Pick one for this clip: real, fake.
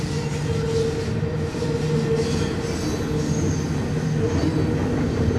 real